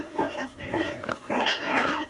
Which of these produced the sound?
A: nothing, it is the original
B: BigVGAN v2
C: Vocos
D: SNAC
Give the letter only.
D